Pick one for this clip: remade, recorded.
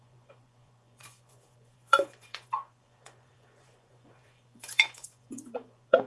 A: remade